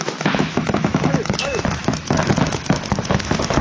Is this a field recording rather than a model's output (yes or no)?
no